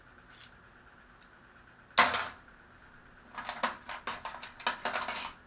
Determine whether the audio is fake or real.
real